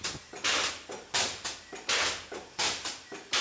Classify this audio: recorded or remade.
recorded